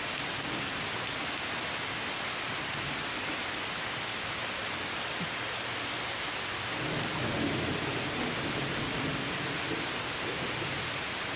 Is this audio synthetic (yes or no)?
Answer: no